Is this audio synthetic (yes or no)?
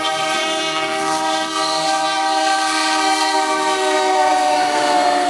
yes